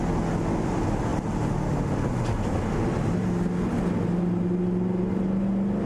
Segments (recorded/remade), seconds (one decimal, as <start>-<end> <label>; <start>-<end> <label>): 0.0-5.9 recorded